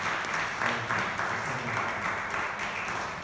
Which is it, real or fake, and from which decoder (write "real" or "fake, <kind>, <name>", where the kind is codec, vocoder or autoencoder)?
real